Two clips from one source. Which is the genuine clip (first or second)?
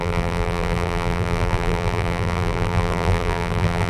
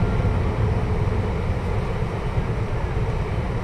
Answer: second